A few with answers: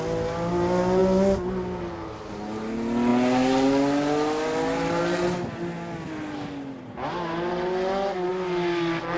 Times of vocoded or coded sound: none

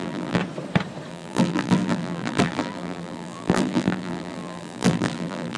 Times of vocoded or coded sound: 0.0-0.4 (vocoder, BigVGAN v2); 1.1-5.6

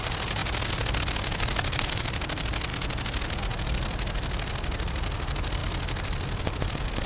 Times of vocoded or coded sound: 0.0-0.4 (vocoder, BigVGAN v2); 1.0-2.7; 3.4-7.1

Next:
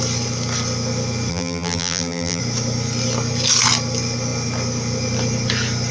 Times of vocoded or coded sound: 1.3-2.4 (vocoder, BigVGAN v2)

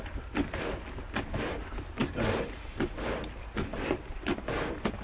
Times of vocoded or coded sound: 3.7-4.2 (vocoder, BigVGAN v2)

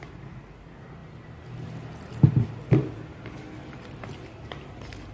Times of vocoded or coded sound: none

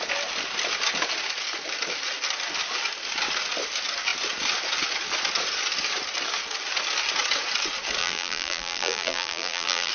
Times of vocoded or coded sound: 8.0-9.9 (vocoder, BigVGAN v2)